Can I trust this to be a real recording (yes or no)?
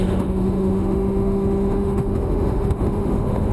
no